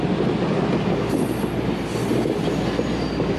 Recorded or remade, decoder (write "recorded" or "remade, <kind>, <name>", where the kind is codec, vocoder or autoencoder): recorded